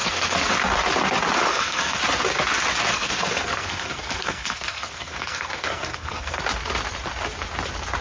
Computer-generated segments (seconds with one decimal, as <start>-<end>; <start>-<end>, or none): 0.0-0.5; 1.5-2.0; 2.9-6.4